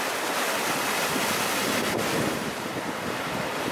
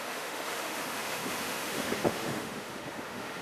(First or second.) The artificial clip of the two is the second